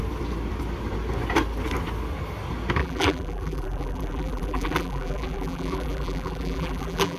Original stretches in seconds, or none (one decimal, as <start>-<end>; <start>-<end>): 0.0-2.8